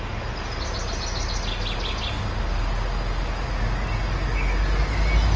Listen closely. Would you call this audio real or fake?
real